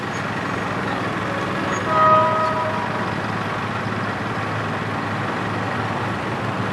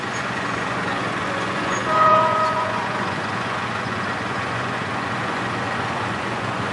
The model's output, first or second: second